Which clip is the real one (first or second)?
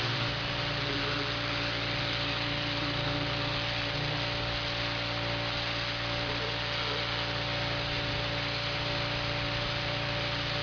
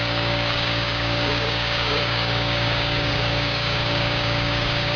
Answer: first